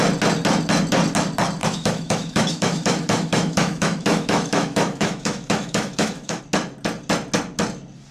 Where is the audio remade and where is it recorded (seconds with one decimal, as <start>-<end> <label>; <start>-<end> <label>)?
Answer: 0.0-1.6 recorded; 1.6-6.4 remade; 6.4-8.1 recorded